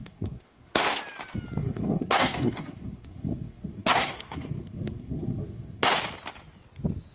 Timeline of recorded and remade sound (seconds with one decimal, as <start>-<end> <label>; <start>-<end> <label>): 0.0-1.0 remade; 1.0-1.6 recorded; 1.6-5.9 remade; 5.9-7.1 recorded